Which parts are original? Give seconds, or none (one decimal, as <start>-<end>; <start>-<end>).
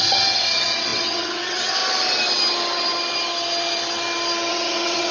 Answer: 1.8-4.5